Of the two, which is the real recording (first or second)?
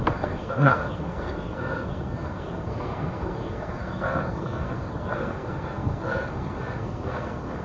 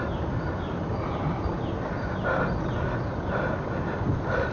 second